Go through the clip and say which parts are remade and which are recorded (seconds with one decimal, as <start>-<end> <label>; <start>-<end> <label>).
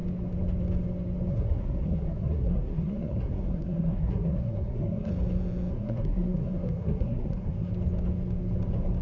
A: 0.0-1.3 recorded; 1.3-5.1 remade; 5.1-5.7 recorded; 5.7-7.7 remade; 7.7-9.0 recorded